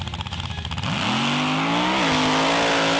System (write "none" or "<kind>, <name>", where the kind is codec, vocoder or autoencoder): none